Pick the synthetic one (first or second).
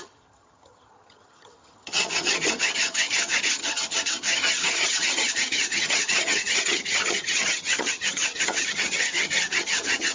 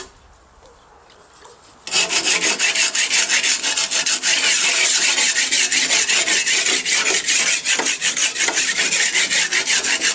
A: first